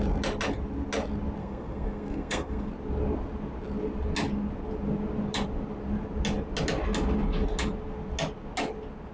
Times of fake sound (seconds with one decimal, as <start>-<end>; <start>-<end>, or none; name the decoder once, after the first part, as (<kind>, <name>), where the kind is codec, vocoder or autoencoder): 1.4-2.7 (codec, SNAC)